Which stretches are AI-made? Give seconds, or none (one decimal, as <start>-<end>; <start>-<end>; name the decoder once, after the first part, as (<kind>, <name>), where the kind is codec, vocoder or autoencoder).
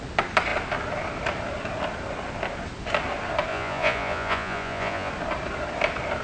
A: 3.5-5.1 (vocoder, Vocos)